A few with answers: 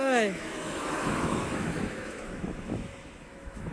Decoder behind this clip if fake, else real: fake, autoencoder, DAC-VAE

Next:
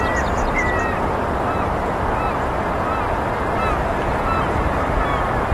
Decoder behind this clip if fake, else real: real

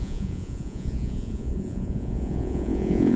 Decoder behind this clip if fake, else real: fake, vocoder, Vocos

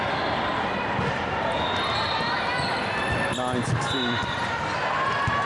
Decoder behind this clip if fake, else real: real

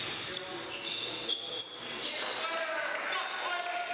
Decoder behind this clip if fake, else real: real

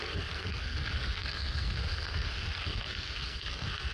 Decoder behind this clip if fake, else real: fake, codec, SNAC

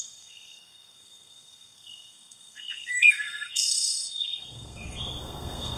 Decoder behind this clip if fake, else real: fake, codec, SNAC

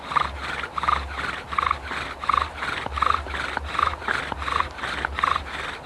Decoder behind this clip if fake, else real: real